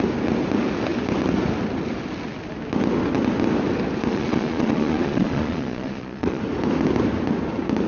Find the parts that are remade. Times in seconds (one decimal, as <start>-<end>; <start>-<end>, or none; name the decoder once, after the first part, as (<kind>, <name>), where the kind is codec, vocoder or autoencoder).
4.1-6.4 (vocoder, Vocos)